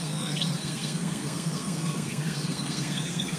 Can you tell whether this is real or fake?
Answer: fake